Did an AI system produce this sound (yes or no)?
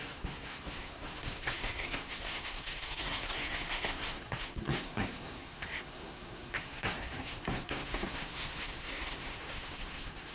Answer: yes